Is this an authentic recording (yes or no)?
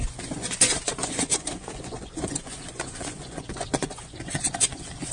no